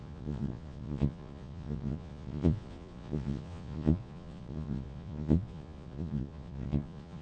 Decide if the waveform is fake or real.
fake